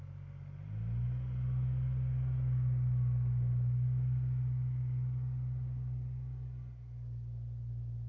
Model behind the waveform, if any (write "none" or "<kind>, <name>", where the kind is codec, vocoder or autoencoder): none